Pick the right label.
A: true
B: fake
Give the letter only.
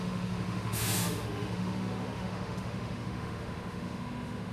B